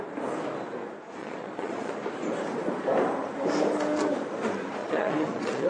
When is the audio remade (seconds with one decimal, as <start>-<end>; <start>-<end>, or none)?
1.2-1.9; 4.8-5.7